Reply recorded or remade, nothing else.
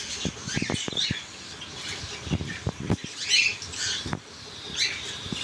recorded